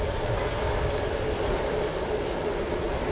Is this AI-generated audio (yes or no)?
no